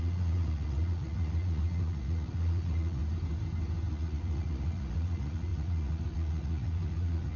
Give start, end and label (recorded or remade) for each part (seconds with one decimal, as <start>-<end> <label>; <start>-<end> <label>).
0.0-3.0 remade; 3.0-3.9 recorded; 3.9-7.4 remade